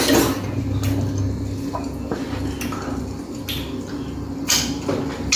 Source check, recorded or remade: recorded